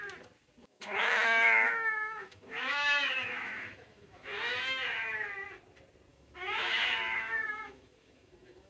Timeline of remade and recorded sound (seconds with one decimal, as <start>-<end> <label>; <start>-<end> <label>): 0.0-0.6 recorded; 0.6-5.3 remade; 5.3-6.1 recorded; 6.1-8.7 remade